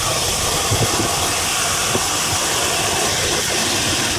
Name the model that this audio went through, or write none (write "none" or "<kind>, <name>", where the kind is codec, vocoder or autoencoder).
vocoder, BigVGAN v2